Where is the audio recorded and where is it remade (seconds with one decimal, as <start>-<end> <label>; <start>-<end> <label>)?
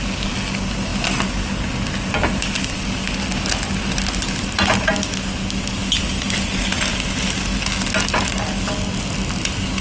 0.0-9.8 recorded